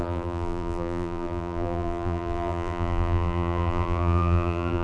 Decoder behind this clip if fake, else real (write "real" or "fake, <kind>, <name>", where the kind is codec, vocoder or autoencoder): fake, vocoder, BigVGAN v2